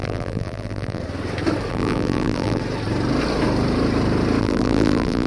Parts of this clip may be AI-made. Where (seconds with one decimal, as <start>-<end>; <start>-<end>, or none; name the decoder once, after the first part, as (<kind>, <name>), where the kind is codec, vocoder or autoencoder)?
0.0-1.0 (vocoder, BigVGAN v2); 1.7-2.6; 4.4-5.3